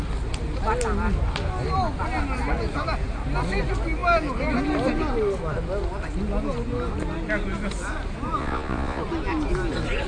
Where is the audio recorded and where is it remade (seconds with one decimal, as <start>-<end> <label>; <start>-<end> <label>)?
0.0-8.4 recorded; 8.4-9.0 remade; 9.0-10.1 recorded